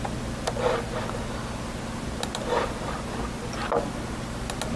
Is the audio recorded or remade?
recorded